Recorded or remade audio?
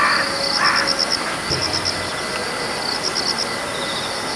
recorded